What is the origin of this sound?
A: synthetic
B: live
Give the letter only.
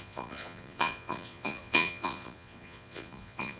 A